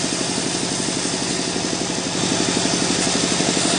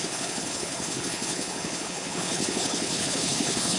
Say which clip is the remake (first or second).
second